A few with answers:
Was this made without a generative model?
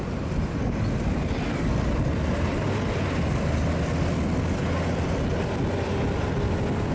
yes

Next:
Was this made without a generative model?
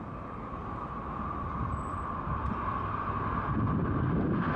yes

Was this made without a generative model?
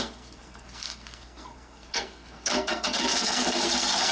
no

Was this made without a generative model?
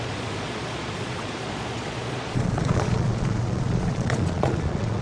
no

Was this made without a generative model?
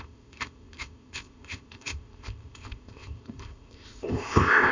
no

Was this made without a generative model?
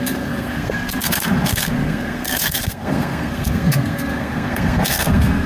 no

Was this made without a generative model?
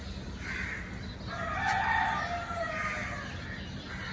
yes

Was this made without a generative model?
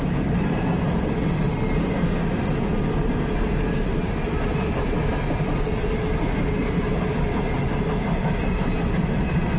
yes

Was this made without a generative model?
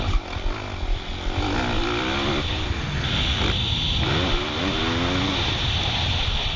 yes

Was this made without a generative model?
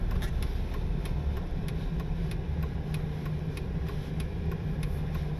yes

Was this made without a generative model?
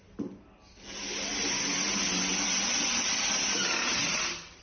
yes